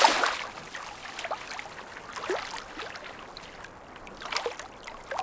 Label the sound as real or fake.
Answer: real